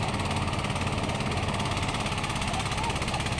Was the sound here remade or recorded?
recorded